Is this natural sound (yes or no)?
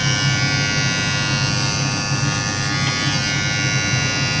yes